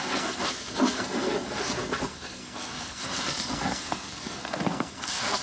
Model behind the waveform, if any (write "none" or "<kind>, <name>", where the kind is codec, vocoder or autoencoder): codec, SNAC